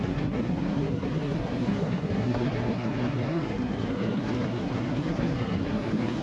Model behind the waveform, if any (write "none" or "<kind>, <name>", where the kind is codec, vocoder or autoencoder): codec, SNAC